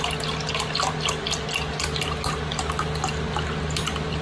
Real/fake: real